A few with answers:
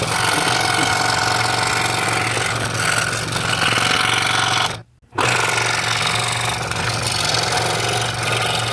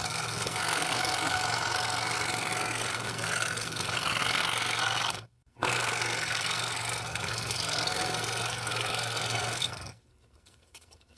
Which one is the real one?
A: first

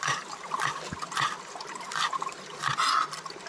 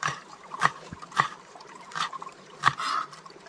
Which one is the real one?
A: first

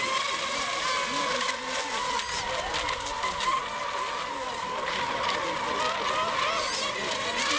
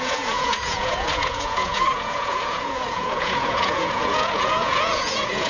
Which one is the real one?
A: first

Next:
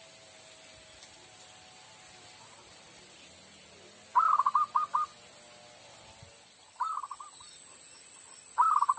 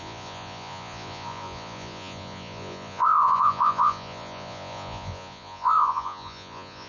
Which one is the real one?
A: first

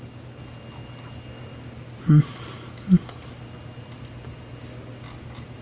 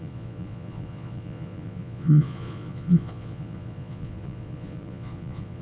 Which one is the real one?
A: first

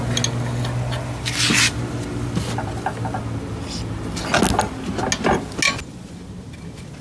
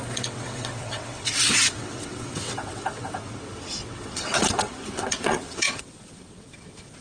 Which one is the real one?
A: first